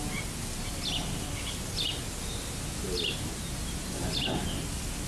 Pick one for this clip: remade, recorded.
recorded